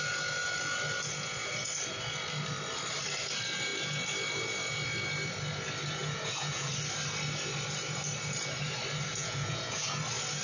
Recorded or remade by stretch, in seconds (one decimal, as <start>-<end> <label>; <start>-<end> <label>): 0.0-6.0 recorded; 6.0-6.7 remade; 6.7-9.2 recorded; 9.2-10.0 remade; 10.0-10.4 recorded